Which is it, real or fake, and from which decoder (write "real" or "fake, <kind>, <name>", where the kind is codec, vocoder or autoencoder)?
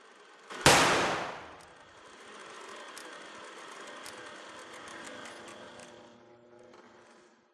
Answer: real